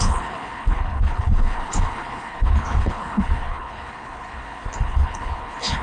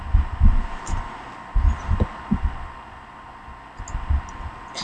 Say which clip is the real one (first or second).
second